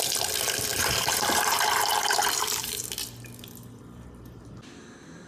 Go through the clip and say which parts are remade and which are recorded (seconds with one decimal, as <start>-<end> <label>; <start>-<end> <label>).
0.0-0.7 recorded; 0.7-2.8 remade; 2.8-5.3 recorded